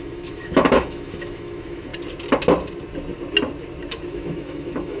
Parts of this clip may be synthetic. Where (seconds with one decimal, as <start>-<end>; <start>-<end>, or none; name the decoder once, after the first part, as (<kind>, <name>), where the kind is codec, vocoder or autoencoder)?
0.0-1.9 (autoencoder, DAC-VAE); 4.1-5.0